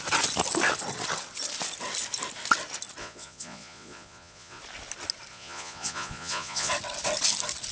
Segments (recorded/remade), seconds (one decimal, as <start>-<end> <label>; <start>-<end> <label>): 0.0-3.0 recorded; 3.0-4.6 remade; 4.6-5.3 recorded; 5.3-6.7 remade; 6.7-7.7 recorded